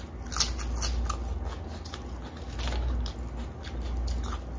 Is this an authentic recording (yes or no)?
yes